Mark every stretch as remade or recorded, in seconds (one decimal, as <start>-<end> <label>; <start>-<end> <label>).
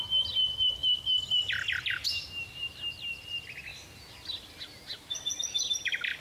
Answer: 0.0-6.2 recorded